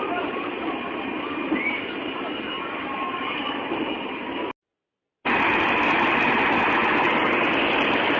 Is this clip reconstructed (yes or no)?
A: no